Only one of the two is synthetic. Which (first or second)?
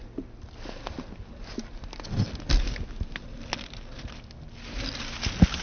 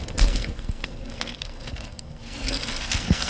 second